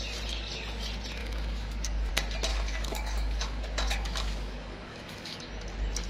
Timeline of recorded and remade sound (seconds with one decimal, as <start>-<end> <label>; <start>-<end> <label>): 0.0-1.2 recorded; 1.2-2.1 remade; 2.1-2.5 recorded; 2.5-5.5 remade; 5.5-6.1 recorded